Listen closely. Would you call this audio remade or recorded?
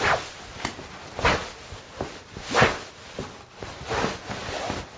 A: recorded